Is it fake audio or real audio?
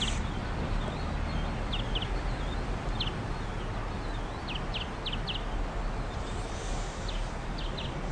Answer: real